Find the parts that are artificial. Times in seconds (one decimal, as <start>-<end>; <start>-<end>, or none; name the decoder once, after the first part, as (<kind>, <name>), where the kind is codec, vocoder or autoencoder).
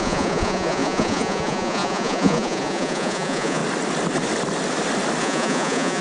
0.0-3.6 (vocoder, Vocos); 5.2-6.0